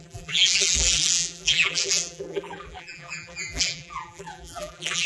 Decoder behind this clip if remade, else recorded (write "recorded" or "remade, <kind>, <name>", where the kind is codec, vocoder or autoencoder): remade, vocoder, BigVGAN v2